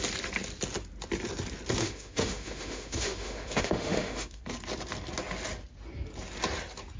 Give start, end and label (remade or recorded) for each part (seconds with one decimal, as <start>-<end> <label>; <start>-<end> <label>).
0.0-1.8 recorded; 1.8-4.4 remade; 4.4-7.0 recorded

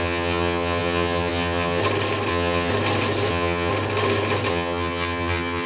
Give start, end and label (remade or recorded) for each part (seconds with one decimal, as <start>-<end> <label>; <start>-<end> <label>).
0.0-1.8 remade; 1.8-2.3 recorded; 2.3-2.7 remade; 2.7-3.3 recorded; 3.3-3.7 remade; 3.7-4.5 recorded; 4.5-5.7 remade